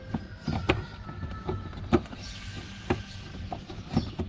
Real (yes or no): yes